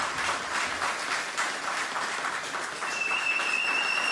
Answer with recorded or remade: recorded